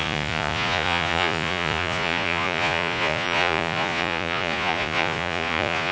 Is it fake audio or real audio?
fake